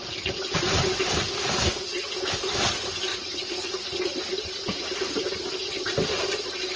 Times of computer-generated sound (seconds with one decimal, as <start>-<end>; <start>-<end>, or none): 3.1-4.2